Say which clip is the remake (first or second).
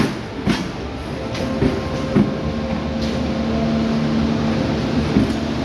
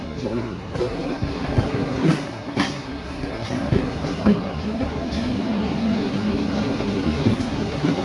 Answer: second